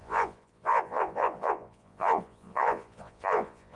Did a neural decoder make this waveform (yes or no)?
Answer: yes